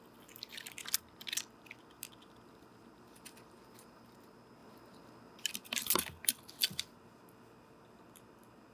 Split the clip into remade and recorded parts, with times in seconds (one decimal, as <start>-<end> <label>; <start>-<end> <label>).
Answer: 0.0-8.7 recorded